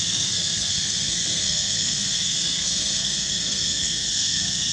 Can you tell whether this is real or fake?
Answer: fake